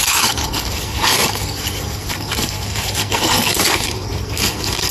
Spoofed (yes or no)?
yes